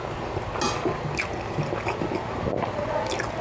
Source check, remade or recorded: recorded